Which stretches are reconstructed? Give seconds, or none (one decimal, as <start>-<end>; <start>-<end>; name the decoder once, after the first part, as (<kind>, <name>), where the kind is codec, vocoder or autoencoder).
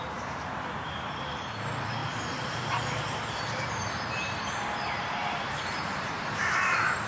0.0-7.1 (vocoder, BigVGAN v2)